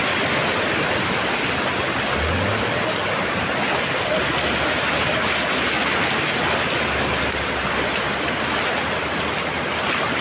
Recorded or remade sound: recorded